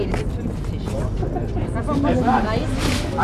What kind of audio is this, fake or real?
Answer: real